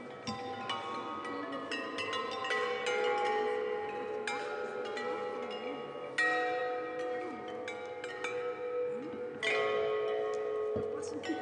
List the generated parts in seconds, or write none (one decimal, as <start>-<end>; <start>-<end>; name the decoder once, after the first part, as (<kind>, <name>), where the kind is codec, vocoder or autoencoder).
none